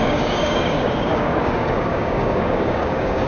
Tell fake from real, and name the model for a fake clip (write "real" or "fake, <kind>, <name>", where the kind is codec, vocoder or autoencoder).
fake, codec, DAC